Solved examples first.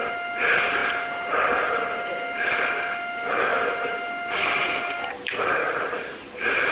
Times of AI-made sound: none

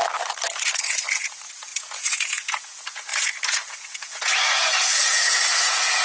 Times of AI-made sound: 0.6-6.0 (vocoder, Vocos)

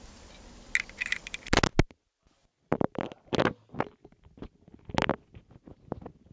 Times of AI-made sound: none